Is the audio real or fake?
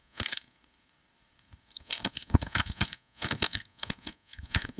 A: fake